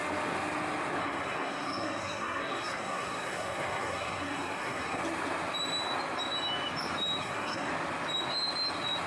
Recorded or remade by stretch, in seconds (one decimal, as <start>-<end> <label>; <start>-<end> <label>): 0.0-1.0 recorded; 1.0-5.0 remade; 5.0-7.2 recorded; 7.2-7.7 remade; 7.7-9.1 recorded